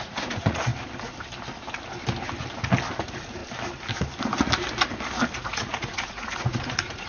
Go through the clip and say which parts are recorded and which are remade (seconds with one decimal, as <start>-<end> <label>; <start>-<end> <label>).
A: 0.0-0.7 remade; 0.7-3.0 recorded; 3.0-3.4 remade; 3.4-5.4 recorded; 5.4-7.1 remade